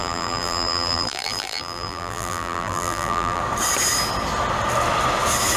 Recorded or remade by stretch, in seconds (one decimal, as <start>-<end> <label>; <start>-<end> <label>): 0.0-3.4 remade; 3.4-5.6 recorded